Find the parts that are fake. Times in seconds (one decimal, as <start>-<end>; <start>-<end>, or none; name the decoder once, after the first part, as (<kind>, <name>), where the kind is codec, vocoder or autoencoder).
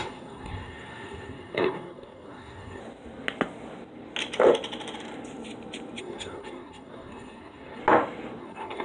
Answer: 0.0-2.8 (codec, SNAC); 6.0-7.8; 8.4-8.8